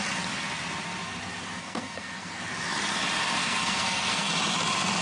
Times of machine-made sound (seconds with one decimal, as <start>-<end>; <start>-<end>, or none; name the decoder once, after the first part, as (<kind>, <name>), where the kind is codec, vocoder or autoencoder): 1.6-2.4 (codec, SNAC); 3.4-4.3